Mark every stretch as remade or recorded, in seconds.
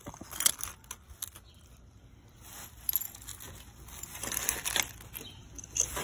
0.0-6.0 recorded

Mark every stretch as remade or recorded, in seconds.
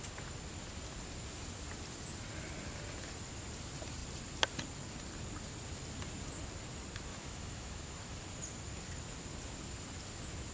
0.0-7.1 recorded; 7.1-8.2 remade; 8.2-10.5 recorded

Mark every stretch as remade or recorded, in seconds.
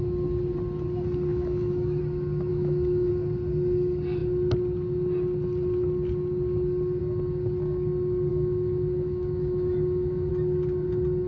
0.0-1.3 recorded; 1.3-2.0 remade; 2.0-2.5 recorded; 2.5-3.1 remade; 3.1-8.3 recorded; 8.3-10.3 remade; 10.3-11.3 recorded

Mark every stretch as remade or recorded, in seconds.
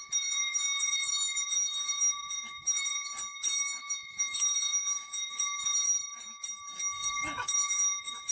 0.0-3.1 remade; 3.1-3.8 recorded; 3.8-6.0 remade; 6.0-7.1 recorded; 7.1-8.3 remade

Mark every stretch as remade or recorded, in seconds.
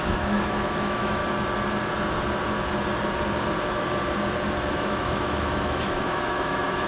0.0-1.2 remade; 1.2-4.7 recorded; 4.7-6.9 remade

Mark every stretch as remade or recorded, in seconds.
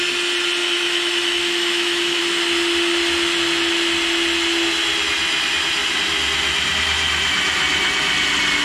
0.0-0.6 recorded; 0.6-2.2 remade; 2.2-8.6 recorded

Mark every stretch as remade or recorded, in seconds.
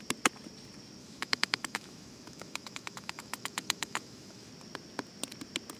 0.0-1.0 recorded; 1.0-4.5 remade; 4.5-5.8 recorded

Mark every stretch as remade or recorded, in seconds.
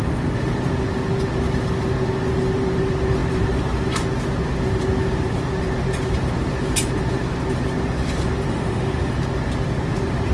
0.0-8.5 recorded; 8.5-9.1 remade; 9.1-10.3 recorded